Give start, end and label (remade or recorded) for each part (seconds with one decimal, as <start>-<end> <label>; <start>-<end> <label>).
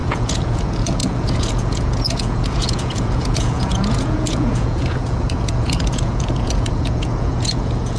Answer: 0.0-8.0 remade